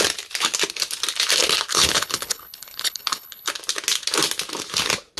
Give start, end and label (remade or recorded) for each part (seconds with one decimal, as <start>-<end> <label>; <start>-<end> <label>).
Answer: 0.0-1.7 recorded; 1.7-3.5 remade; 3.5-5.2 recorded